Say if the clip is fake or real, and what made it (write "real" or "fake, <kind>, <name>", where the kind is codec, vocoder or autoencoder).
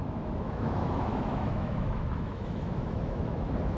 fake, autoencoder, DAC-VAE